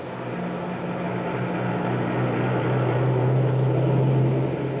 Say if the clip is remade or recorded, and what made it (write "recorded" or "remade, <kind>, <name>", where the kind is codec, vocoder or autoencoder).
recorded